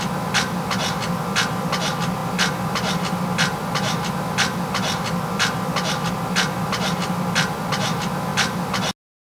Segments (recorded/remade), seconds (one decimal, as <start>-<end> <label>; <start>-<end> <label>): 0.0-9.4 recorded

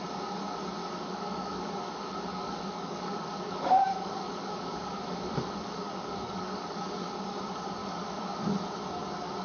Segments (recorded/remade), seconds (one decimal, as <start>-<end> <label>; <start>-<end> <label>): 0.0-0.8 recorded; 0.8-1.9 remade; 1.9-2.3 recorded; 2.3-7.1 remade; 7.1-7.8 recorded; 7.8-8.5 remade; 8.5-9.4 recorded

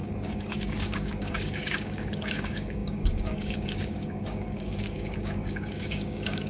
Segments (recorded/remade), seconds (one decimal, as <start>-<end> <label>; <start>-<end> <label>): 0.0-6.5 remade

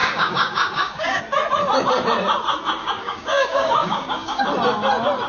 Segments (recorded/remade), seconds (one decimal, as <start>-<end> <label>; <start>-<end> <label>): 0.0-1.2 remade; 1.2-2.8 recorded; 2.8-4.4 remade; 4.4-5.3 recorded

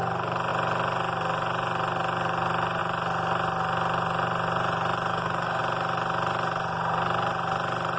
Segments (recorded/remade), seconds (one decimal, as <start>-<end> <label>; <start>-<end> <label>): 0.0-5.1 recorded; 5.1-5.6 remade; 5.6-8.0 recorded

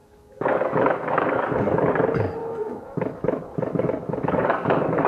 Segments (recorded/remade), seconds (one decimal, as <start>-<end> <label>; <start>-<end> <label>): 0.0-1.9 remade; 1.9-2.4 recorded; 2.4-5.1 remade